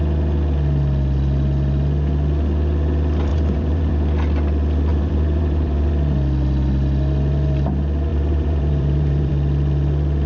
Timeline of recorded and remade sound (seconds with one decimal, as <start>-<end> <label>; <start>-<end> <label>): 0.0-3.3 recorded; 3.3-3.9 remade; 3.9-4.9 recorded; 4.9-5.9 remade; 5.9-8.1 recorded; 8.1-9.3 remade; 9.3-10.3 recorded